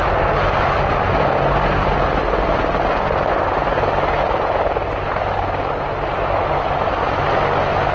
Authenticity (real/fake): real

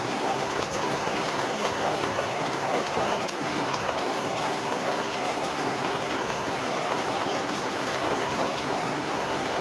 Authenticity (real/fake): fake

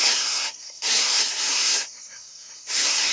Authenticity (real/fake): fake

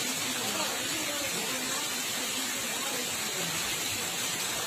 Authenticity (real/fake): real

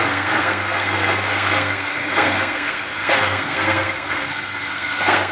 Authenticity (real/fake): fake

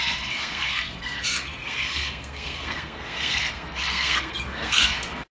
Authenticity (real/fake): fake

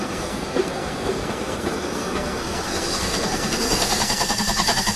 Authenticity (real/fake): fake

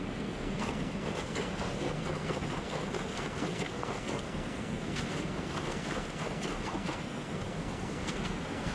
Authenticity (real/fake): fake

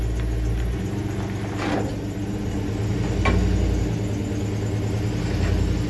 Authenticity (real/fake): real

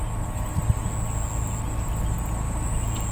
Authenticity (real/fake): real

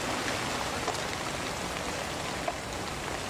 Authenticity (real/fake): real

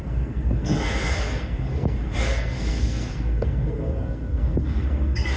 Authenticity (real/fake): fake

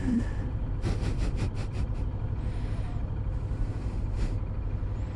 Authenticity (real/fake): real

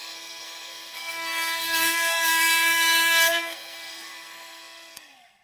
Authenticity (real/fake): fake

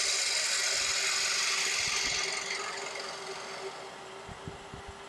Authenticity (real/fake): real